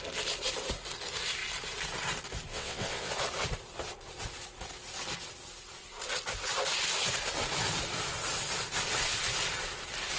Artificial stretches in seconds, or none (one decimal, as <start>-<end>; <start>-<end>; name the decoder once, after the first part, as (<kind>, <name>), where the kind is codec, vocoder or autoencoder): 2.5-3.1 (vocoder, WaveNeXt)